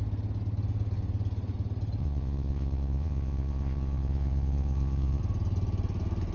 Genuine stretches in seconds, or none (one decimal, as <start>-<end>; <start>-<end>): 0.0-2.0; 5.2-6.3

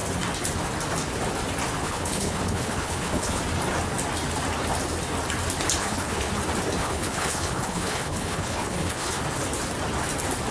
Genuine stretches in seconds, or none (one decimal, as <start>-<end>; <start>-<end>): 0.0-1.8; 3.4-5.8; 6.3-6.8; 9.2-10.5

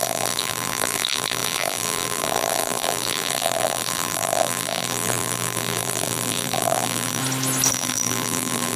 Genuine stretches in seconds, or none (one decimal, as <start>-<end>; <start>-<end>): 7.2-7.7

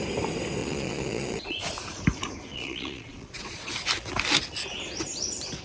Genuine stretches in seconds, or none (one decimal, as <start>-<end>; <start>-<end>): 0.0-0.6; 1.7-2.5; 3.7-5.6

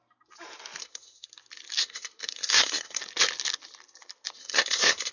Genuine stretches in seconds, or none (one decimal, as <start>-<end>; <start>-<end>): 0.0-0.8; 1.3-1.8; 3.0-4.4